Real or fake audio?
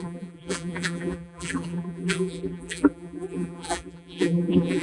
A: fake